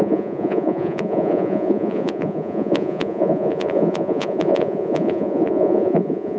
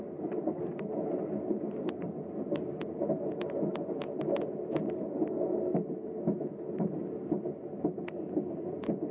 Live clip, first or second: second